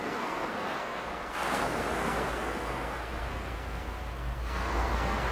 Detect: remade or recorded remade